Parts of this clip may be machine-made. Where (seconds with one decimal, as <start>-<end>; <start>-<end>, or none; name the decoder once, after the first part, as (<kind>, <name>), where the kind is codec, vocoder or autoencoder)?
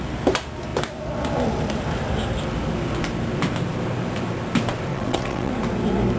4.9-5.5 (vocoder, WaveNeXt)